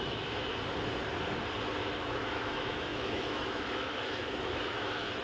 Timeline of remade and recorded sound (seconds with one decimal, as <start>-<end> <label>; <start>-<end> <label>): 0.0-0.5 remade; 0.5-2.0 recorded; 2.0-5.2 remade